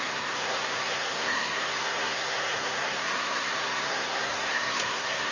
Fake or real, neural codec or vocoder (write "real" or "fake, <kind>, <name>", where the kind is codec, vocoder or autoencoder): fake, codec, SNAC